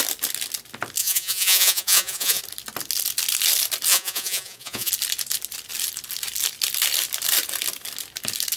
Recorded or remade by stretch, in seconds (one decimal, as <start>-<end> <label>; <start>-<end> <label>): 0.0-1.0 recorded; 1.0-2.4 remade; 2.4-3.9 recorded; 3.9-4.9 remade; 4.9-8.6 recorded